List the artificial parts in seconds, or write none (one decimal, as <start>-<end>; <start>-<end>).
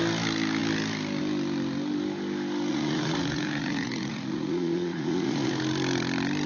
2.7-5.5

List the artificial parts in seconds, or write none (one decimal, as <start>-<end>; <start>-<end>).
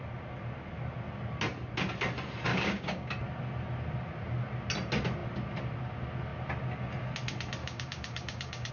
2.5-3.1; 7.6-8.7